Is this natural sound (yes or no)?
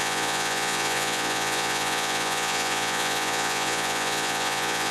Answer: no